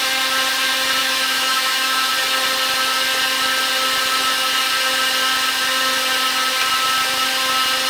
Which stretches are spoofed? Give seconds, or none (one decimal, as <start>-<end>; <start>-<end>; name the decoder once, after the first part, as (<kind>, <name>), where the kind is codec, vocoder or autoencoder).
1.0-2.1 (autoencoder, DAC-VAE)